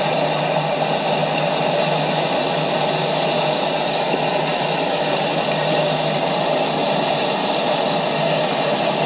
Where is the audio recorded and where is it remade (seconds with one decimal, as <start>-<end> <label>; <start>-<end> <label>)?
0.0-9.1 recorded